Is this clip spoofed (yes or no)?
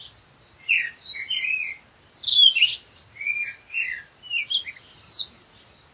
no